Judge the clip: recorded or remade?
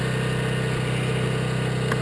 recorded